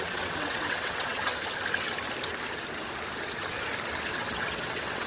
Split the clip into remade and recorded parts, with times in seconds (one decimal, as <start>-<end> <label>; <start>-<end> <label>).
0.0-1.3 remade; 1.3-4.1 recorded; 4.1-5.1 remade